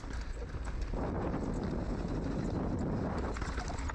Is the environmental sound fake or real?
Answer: real